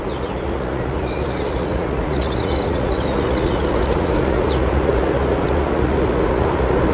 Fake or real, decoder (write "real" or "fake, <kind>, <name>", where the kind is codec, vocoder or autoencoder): fake, vocoder, Vocos